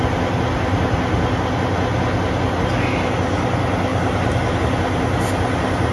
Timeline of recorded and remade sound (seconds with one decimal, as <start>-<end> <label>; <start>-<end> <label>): 0.0-5.9 recorded